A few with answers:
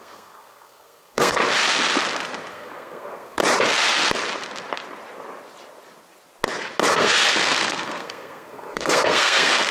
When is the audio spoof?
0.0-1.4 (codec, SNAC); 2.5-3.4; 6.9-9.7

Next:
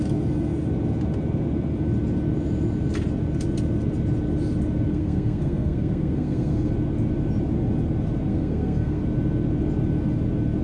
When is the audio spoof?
4.9-6.7 (codec, SNAC); 8.3-9.0

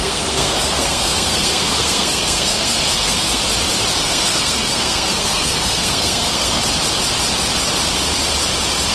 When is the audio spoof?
0.0-3.4 (codec, SNAC); 3.9-6.6

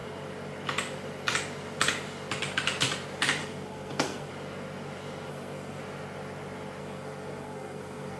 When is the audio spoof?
3.4-4.3 (codec, SNAC); 5.3-5.8; 6.8-8.2

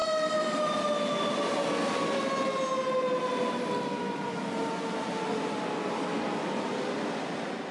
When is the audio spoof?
none